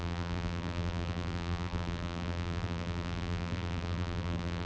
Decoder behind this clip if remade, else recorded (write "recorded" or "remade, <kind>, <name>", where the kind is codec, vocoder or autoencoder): remade, vocoder, BigVGAN v2